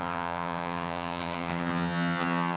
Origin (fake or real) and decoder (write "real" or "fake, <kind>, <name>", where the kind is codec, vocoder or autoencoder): fake, vocoder, HiFi-GAN